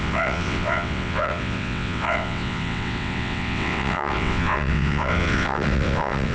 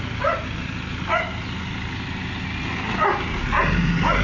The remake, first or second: first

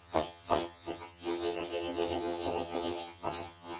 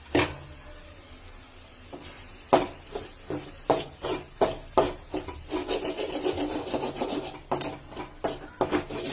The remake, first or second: first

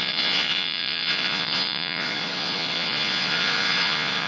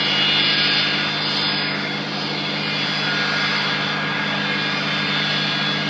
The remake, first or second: first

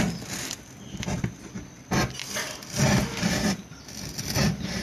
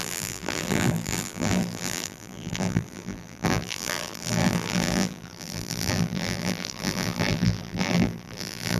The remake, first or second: second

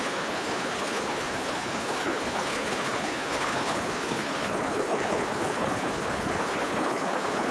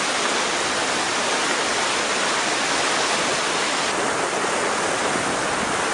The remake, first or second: first